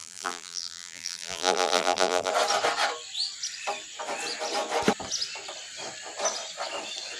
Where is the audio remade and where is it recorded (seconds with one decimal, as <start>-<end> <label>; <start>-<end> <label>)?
0.0-2.3 remade; 2.3-7.2 recorded